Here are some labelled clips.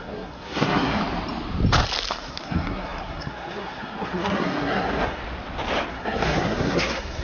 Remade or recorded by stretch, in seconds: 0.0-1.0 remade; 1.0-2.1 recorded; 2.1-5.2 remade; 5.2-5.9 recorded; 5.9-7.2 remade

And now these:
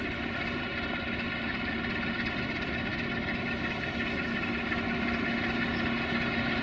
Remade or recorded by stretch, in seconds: 0.0-0.7 remade; 0.7-1.5 recorded; 1.5-2.9 remade; 2.9-6.6 recorded

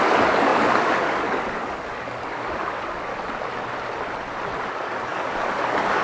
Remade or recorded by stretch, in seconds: 0.0-3.1 remade; 3.1-4.7 recorded; 4.7-6.0 remade

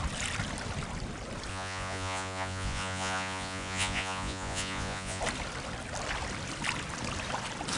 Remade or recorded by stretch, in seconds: 0.0-1.5 recorded; 1.5-5.2 remade; 5.2-7.8 recorded

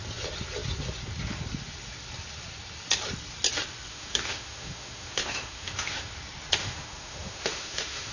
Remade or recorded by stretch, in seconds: 0.0-3.9 recorded; 3.9-6.1 remade; 6.1-6.6 recorded; 6.6-8.1 remade

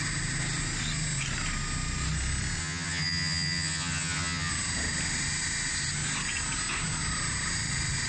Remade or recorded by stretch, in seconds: 0.0-2.6 recorded; 2.6-4.5 remade; 4.5-8.1 recorded

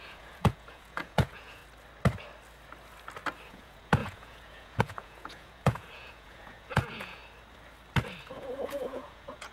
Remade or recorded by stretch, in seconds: 0.0-1.6 remade; 1.6-3.5 recorded; 3.5-7.2 remade; 7.2-8.3 recorded; 8.3-9.5 remade

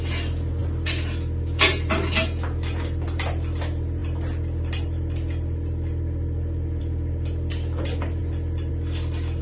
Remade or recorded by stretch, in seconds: 0.0-9.4 recorded